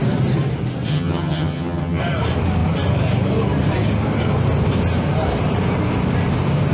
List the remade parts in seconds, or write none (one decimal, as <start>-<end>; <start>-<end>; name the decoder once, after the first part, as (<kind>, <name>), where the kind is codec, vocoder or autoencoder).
0.9-2.0 (vocoder, HiFi-GAN)